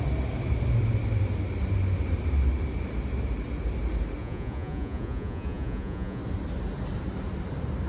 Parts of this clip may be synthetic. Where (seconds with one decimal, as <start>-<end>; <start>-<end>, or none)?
4.2-6.2

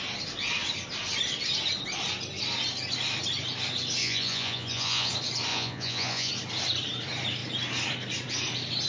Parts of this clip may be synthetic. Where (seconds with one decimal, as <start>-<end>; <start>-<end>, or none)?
4.0-5.1; 5.5-6.3

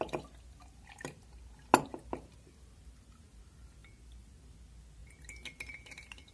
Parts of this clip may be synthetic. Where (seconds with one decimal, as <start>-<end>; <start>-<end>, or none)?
none

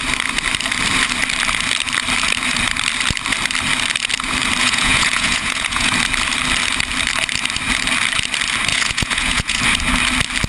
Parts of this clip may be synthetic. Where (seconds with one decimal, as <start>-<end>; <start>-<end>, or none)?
4.6-5.9; 8.7-9.6

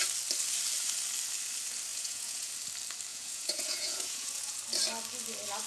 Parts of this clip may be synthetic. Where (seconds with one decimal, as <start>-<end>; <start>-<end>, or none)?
1.9-2.5; 3.1-4.6

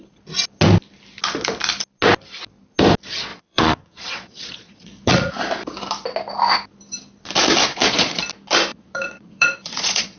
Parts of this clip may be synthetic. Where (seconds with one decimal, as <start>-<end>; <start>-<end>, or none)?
3.3-5.3; 7.7-8.2; 8.7-10.2